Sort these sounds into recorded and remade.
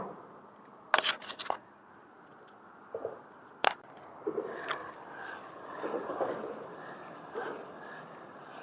recorded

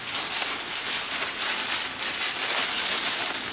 recorded